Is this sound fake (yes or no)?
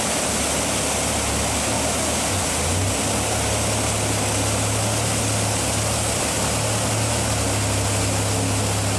no